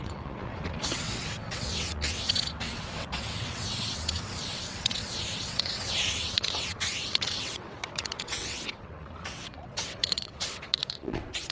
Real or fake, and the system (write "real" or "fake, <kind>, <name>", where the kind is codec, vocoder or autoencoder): fake, vocoder, WaveNeXt